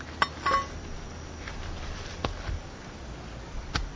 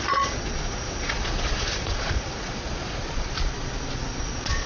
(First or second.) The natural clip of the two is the first